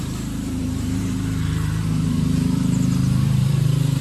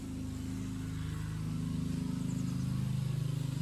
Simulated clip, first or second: first